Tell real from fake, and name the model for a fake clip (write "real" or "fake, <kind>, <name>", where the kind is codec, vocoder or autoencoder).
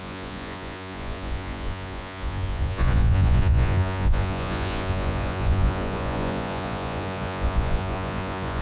fake, vocoder, Vocos